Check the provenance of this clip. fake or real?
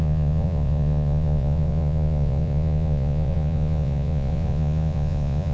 fake